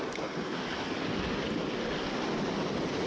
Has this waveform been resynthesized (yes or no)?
no